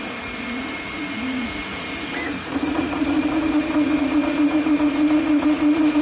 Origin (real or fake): fake